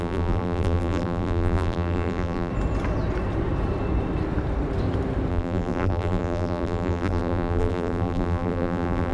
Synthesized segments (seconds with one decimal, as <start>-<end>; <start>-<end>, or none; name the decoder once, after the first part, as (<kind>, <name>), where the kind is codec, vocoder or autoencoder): 0.0-2.5 (vocoder, BigVGAN v2); 5.3-9.1

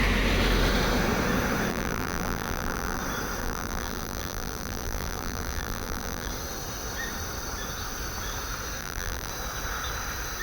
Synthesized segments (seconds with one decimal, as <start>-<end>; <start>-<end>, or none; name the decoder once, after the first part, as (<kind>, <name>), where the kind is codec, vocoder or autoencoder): 1.7-3.0 (vocoder, BigVGAN v2); 3.4-6.3; 8.8-9.3

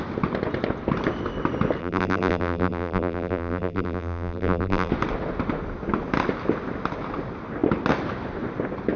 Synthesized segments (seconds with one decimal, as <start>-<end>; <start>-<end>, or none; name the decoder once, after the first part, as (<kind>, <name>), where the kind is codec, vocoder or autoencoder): 1.8-4.9 (vocoder, BigVGAN v2)